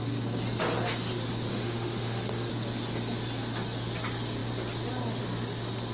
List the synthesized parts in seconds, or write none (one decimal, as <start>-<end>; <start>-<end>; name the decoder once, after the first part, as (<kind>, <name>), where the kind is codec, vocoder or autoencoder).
1.5-2.5 (autoencoder, DAC-VAE)